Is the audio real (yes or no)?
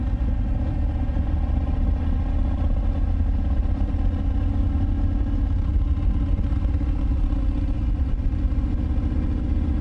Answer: yes